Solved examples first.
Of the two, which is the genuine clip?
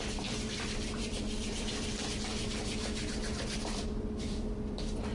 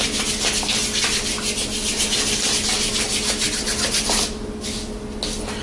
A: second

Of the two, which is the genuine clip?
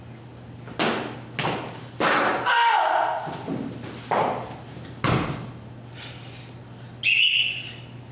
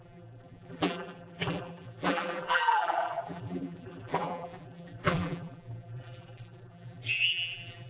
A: first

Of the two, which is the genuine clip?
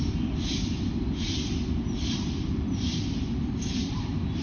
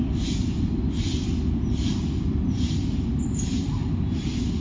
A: second